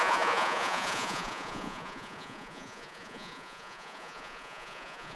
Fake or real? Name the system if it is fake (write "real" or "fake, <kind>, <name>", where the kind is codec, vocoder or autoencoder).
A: fake, vocoder, Vocos